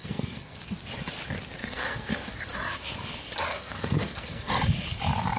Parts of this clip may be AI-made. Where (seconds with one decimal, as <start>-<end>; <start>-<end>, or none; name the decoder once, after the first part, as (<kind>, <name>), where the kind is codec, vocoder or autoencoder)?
0.0-0.6 (codec, SNAC); 1.6-2.3; 3.5-4.5